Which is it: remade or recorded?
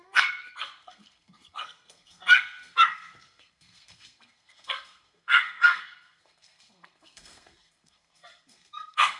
remade